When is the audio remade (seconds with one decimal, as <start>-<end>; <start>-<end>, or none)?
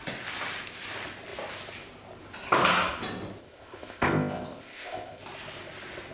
3.4-5.2